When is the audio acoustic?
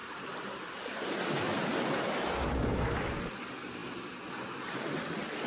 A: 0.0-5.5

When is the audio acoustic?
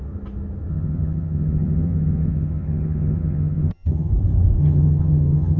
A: 0.0-0.7; 4.1-4.6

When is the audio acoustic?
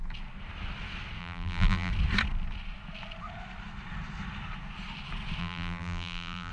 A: 0.0-1.2; 1.9-5.4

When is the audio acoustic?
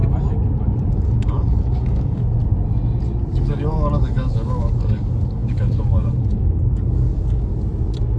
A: 0.0-0.9; 2.2-3.4; 7.5-8.2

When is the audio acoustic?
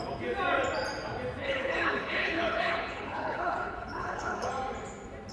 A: 0.0-1.4; 4.5-5.3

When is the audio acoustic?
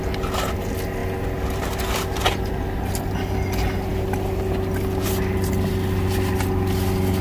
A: 0.0-7.2